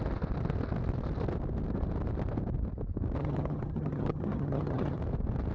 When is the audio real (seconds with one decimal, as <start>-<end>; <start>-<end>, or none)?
0.0-3.2; 5.0-5.5